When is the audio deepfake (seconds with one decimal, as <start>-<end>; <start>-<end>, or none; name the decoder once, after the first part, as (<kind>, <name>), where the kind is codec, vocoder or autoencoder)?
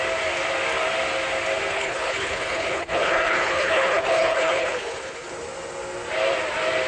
1.7-5.3 (codec, HILCodec)